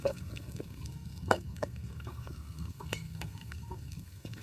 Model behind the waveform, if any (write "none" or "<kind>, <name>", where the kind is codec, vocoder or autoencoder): codec, SNAC